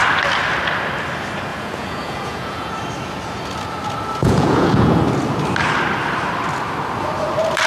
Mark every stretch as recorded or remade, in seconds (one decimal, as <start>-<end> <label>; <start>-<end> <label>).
0.0-1.5 recorded; 1.5-2.7 remade; 2.7-4.2 recorded; 4.2-5.0 remade; 5.0-7.7 recorded